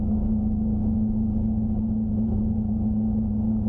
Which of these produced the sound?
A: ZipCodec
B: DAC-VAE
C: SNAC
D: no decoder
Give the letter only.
B